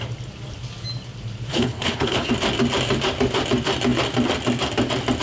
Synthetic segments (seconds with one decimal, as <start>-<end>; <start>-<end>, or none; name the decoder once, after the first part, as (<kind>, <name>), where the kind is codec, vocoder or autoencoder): 1.5-2.3 (codec, HILCodec)